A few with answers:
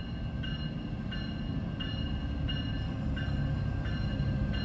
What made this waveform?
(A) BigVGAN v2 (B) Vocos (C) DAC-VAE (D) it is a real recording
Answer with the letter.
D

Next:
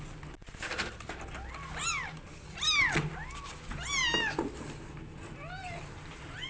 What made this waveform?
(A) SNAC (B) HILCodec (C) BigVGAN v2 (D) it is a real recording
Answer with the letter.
D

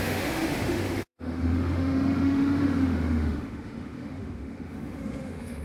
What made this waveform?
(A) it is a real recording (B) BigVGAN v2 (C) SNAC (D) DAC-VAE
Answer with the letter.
D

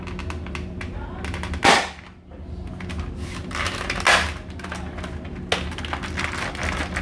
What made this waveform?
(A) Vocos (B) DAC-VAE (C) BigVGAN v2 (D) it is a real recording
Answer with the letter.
D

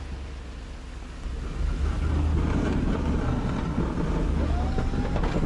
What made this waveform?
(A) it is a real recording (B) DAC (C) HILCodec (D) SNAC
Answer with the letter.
A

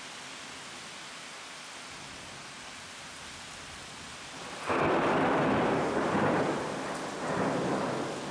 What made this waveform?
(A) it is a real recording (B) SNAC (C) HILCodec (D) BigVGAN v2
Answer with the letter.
A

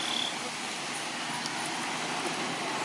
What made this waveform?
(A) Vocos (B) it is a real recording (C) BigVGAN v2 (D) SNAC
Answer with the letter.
B